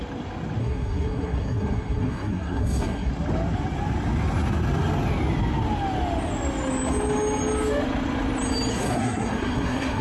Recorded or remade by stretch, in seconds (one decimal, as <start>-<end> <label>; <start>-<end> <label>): 0.0-0.6 recorded; 0.6-3.1 remade; 3.1-8.7 recorded; 8.7-10.0 remade